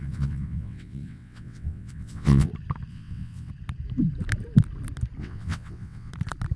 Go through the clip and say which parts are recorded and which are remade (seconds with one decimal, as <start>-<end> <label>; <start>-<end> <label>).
0.0-2.5 remade; 2.5-2.9 recorded; 2.9-3.5 remade; 3.5-5.2 recorded; 5.2-6.1 remade; 6.1-6.6 recorded